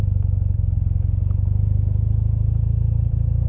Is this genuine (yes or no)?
yes